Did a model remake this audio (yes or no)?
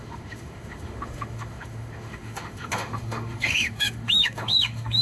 yes